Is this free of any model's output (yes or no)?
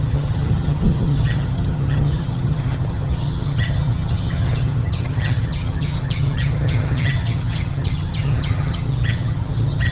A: no